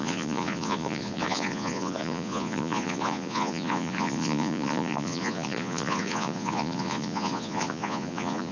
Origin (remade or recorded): remade